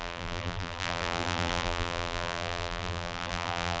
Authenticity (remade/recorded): remade